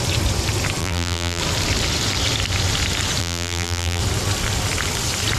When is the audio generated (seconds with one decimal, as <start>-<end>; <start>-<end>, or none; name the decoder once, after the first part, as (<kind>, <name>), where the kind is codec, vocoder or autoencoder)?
0.8-1.4 (vocoder, BigVGAN v2); 3.2-4.0